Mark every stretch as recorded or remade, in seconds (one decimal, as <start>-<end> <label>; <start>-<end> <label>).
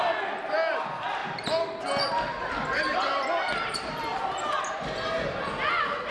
0.0-6.1 recorded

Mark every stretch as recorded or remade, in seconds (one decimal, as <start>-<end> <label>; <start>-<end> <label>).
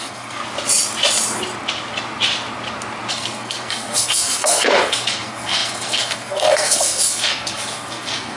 0.0-0.4 remade; 0.4-3.1 recorded; 3.1-8.4 remade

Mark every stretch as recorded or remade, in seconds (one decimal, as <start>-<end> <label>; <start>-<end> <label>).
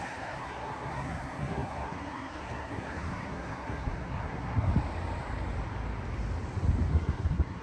0.0-4.7 remade; 4.7-6.9 recorded; 6.9-7.6 remade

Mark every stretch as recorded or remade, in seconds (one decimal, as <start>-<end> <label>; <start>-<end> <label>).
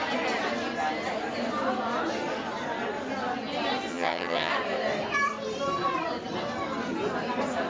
0.0-3.9 recorded; 3.9-4.5 remade; 4.5-7.7 recorded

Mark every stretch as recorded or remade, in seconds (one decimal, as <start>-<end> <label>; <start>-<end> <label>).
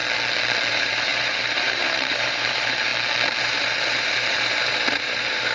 0.0-0.7 recorded; 0.7-2.9 remade; 2.9-3.4 recorded; 3.4-5.5 remade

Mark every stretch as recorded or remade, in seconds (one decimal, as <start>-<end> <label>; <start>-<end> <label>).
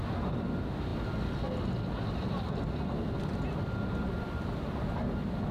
0.0-4.0 recorded; 4.0-4.9 remade; 4.9-5.5 recorded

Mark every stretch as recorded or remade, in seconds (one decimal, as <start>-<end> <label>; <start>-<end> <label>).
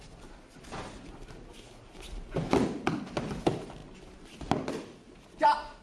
0.0-5.8 recorded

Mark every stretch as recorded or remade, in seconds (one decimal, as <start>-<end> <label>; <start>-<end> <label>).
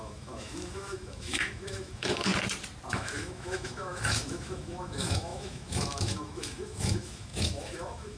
0.0-2.3 remade; 2.3-2.9 recorded; 2.9-8.2 remade